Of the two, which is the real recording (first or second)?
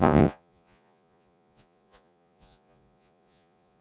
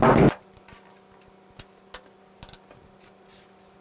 second